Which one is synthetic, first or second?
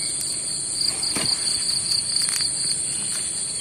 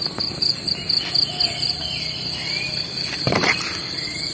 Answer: second